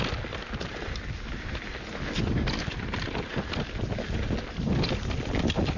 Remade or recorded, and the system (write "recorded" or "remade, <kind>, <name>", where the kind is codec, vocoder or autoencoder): recorded